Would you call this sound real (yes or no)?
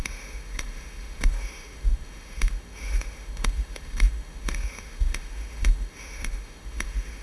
no